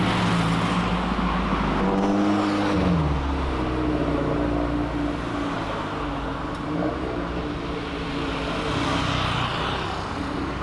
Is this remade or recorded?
recorded